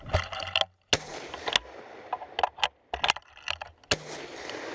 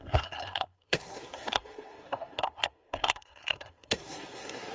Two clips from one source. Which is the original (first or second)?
first